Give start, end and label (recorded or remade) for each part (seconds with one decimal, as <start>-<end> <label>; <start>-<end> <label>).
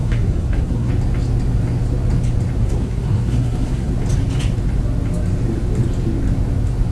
0.0-0.9 remade; 0.9-2.6 recorded; 2.6-3.9 remade; 3.9-6.9 recorded